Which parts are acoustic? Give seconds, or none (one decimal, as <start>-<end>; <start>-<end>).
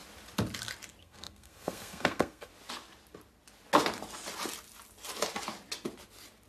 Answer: 0.0-1.0; 2.5-6.5